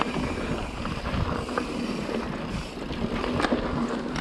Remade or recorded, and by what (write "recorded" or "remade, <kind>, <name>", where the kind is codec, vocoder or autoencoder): recorded